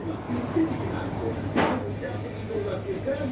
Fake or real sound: real